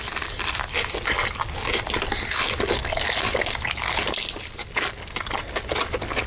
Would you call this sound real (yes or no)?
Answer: yes